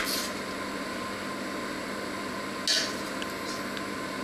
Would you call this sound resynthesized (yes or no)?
no